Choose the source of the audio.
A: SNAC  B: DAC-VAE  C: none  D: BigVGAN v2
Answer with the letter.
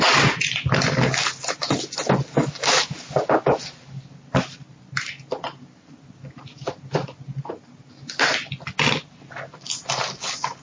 C